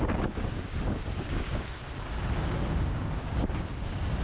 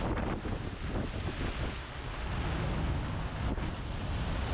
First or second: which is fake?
first